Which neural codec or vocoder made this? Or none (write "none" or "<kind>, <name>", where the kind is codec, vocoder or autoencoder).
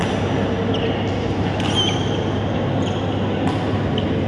none